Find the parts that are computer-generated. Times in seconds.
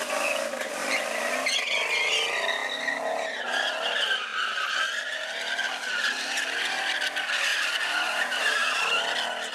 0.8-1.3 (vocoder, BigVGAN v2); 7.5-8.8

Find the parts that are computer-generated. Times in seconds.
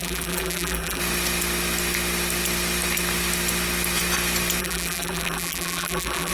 0.0-1.0 (vocoder, BigVGAN v2); 4.6-6.3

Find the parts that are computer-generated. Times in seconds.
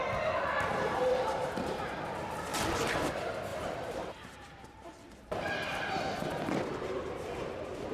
0.7-2.0 (vocoder, BigVGAN v2); 3.5-5.9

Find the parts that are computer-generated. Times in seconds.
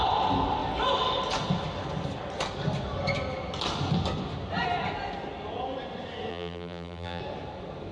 6.3-7.2 (vocoder, BigVGAN v2)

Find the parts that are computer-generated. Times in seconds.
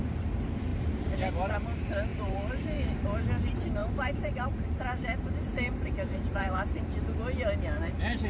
0.7-1.3 (vocoder, BigVGAN v2); 2.1-3.0; 3.8-6.9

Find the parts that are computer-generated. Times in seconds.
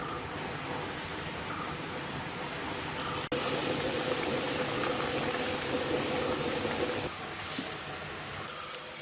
0.0-0.6 (vocoder, BigVGAN v2); 1.1-2.5; 3.6-5.0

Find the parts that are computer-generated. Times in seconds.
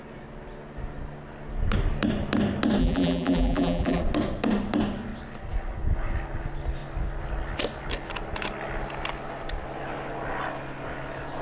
2.8-4.0 (vocoder, BigVGAN v2)